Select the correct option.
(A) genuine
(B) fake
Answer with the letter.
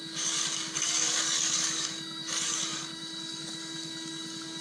B